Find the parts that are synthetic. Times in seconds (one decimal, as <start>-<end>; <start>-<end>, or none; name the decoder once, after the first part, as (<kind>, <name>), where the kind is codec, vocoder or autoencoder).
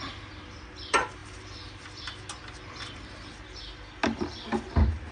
none